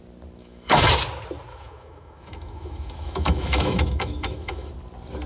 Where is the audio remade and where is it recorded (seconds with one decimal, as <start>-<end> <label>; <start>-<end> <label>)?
0.0-0.4 recorded; 0.4-0.9 remade; 0.9-1.5 recorded; 1.5-4.7 remade; 4.7-5.3 recorded